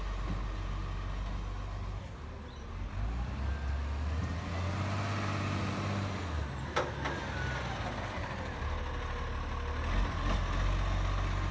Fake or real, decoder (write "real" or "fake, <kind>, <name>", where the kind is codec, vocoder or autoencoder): real